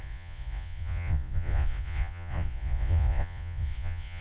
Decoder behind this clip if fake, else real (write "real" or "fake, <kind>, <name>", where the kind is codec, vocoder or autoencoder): fake, vocoder, Vocos